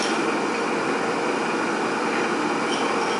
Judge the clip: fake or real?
real